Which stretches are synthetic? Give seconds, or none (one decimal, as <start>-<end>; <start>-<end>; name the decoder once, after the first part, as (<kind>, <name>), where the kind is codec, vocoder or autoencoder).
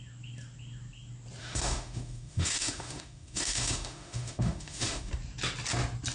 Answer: 1.4-5.1 (autoencoder, DAC-VAE)